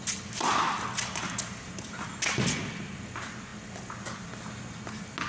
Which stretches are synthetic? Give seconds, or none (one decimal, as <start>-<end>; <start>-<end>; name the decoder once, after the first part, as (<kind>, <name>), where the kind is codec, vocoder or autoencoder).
none